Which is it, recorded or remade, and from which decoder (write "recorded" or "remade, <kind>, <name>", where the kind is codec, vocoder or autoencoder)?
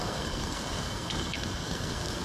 remade, codec, SNAC